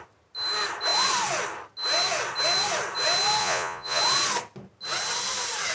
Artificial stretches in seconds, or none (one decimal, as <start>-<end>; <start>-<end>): 3.4-4.0